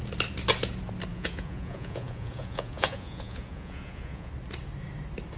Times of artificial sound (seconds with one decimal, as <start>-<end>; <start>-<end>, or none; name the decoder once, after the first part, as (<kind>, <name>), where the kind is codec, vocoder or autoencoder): 1.1-4.3 (vocoder, Vocos)